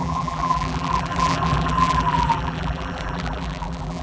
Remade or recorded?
remade